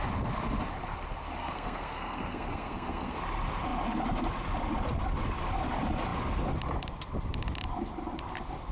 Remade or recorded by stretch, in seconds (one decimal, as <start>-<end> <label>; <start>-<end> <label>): 0.0-1.4 recorded; 1.4-3.2 remade; 3.2-8.7 recorded